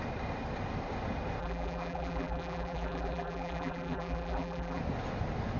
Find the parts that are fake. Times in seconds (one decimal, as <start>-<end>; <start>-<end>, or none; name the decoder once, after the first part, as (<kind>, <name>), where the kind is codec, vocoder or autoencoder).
1.4-4.8 (vocoder, BigVGAN v2)